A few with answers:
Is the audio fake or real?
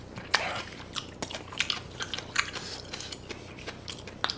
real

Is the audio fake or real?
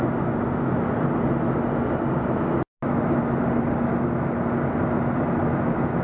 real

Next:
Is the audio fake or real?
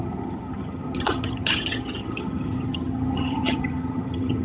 fake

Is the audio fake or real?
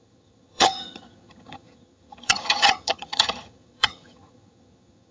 fake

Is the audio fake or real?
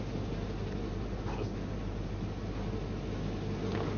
real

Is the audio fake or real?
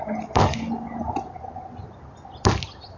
real